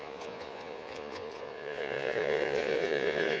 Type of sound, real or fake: fake